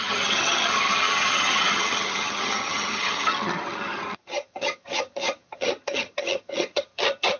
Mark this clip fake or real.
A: fake